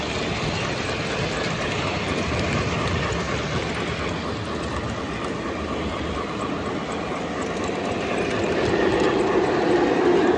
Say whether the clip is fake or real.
real